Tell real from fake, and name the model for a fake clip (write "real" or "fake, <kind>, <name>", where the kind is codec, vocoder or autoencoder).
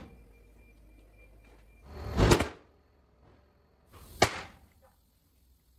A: real